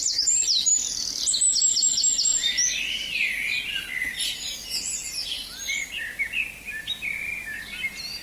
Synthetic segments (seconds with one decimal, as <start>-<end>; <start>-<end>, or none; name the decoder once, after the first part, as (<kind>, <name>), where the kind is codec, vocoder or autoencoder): none

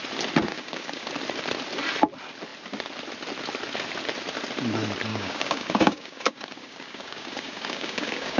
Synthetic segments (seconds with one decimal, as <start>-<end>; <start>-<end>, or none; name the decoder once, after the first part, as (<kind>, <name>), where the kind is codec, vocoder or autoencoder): 0.5-1.1 (codec, DAC); 5.1-8.4